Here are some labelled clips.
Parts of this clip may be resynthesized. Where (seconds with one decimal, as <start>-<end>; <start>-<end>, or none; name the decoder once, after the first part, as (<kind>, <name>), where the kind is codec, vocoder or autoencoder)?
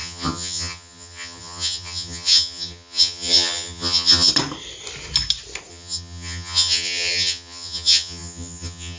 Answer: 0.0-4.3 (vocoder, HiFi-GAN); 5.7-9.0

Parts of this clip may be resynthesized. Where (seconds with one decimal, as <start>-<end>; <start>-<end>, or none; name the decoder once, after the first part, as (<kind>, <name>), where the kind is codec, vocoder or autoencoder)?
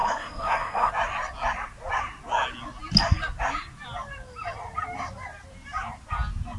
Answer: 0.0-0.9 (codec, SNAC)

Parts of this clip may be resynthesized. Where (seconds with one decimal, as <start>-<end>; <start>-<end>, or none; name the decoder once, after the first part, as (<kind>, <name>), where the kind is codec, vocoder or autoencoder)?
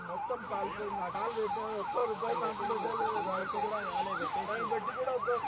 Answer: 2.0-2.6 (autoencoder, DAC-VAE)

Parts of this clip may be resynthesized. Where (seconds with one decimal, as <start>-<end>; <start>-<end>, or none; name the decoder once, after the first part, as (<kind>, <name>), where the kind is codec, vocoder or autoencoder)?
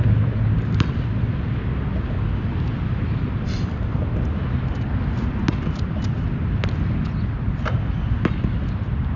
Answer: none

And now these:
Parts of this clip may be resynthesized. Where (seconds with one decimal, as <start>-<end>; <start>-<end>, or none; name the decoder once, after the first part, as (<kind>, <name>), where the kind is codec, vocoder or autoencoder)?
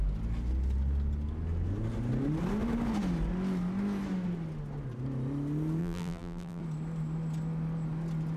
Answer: 5.8-6.6 (vocoder, BigVGAN v2)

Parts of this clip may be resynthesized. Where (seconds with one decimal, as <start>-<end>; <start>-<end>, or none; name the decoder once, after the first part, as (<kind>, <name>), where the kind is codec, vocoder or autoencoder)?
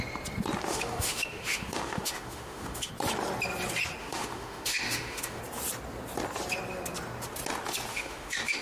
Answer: 0.7-2.9 (autoencoder, DAC-VAE); 4.0-5.4; 7.9-8.6